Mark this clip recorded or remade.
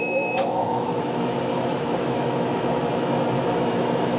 remade